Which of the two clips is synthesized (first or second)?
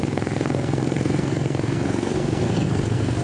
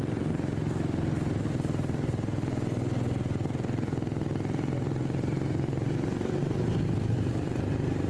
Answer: first